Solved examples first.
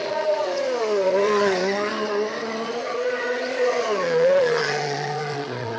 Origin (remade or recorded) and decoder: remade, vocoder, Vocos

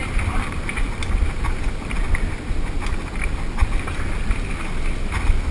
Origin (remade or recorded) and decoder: recorded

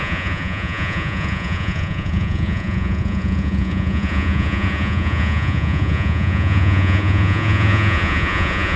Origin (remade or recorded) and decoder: remade, vocoder, Vocos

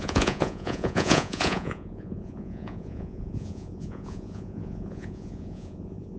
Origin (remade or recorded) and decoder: remade, vocoder, Vocos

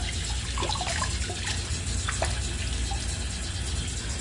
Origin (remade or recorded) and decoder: recorded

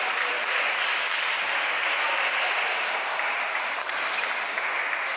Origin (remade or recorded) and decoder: recorded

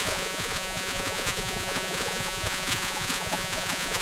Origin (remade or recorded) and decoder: remade, vocoder, Vocos